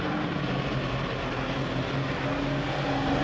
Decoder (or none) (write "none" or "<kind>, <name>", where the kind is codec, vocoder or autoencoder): none